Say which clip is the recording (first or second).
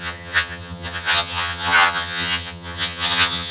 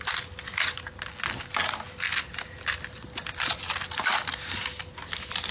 second